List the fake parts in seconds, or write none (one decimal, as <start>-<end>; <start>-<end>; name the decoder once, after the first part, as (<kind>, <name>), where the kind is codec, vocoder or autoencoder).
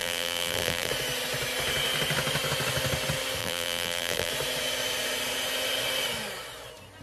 0.0-0.9 (vocoder, BigVGAN v2); 3.4-4.3